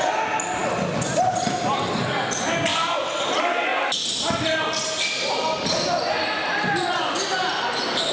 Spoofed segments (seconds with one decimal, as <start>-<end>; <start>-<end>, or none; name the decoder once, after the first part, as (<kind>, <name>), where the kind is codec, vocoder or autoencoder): none